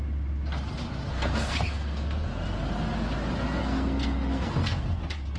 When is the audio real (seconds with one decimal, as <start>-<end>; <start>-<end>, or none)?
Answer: 0.0-1.1; 2.3-3.6; 5.0-5.4